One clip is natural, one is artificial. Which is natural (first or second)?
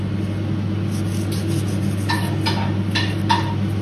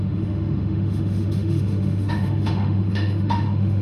first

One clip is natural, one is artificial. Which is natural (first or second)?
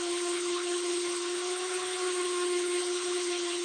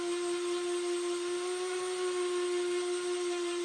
second